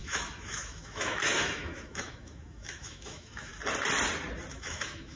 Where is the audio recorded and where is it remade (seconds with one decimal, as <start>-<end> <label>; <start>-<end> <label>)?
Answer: 0.0-3.5 remade; 3.5-4.5 recorded; 4.5-5.2 remade